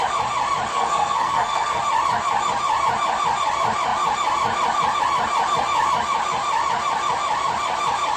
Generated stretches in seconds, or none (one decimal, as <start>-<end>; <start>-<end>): 0.7-1.8